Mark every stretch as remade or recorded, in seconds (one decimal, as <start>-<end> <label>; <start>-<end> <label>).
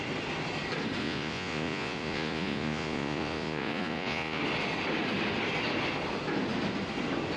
0.0-1.0 recorded; 1.0-4.4 remade; 4.4-7.4 recorded